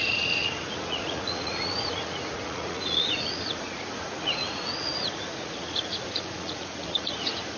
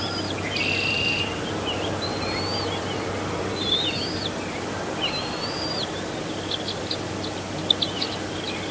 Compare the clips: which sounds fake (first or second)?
first